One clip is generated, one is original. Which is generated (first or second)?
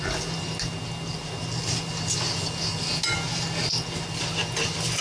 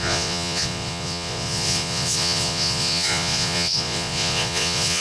second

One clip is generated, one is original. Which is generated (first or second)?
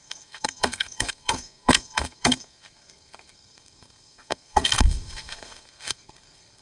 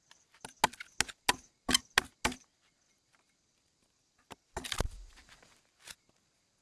first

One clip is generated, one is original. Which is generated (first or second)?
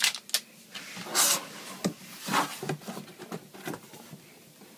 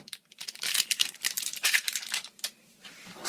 second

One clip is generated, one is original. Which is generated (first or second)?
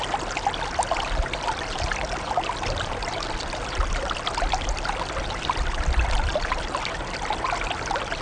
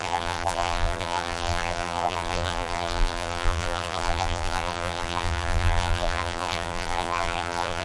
second